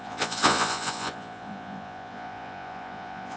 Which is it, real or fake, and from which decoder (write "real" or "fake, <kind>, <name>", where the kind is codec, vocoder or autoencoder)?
fake, vocoder, Vocos